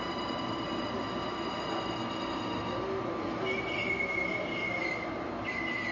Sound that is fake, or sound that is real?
real